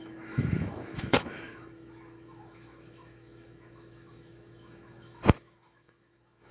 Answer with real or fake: fake